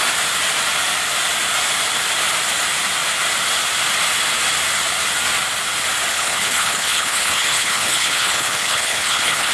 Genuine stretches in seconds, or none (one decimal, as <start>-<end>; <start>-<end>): 0.0-6.1